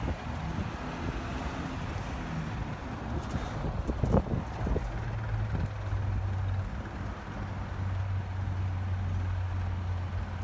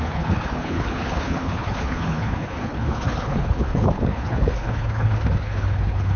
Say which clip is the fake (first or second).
second